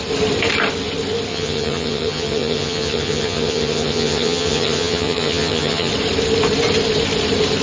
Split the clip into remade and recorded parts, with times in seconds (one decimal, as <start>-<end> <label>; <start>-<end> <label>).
0.0-1.3 recorded; 1.3-5.9 remade; 5.9-7.6 recorded